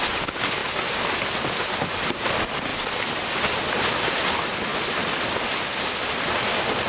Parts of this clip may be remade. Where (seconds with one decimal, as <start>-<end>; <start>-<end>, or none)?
2.7-3.9; 4.7-6.5

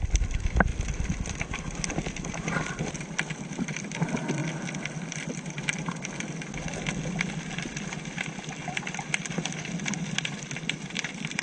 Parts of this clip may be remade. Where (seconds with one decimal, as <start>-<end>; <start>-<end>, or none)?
0.0-0.7; 1.6-4.4; 7.6-11.4

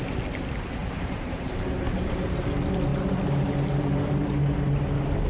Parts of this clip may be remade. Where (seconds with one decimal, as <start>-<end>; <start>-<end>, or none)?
0.8-2.4

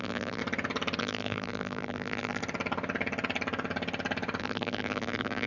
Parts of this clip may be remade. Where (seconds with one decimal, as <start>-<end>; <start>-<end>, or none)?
0.0-0.4; 1.0-2.4; 4.4-5.5